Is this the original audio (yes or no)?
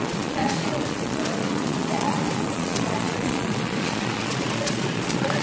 no